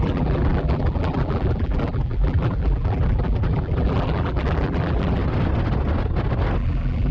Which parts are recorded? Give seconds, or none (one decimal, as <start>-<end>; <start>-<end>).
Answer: 5.2-6.6